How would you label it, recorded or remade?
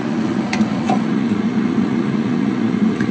remade